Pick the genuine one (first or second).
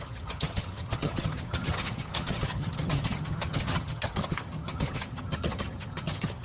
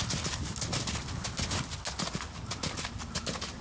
second